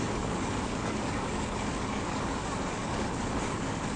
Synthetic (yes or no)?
yes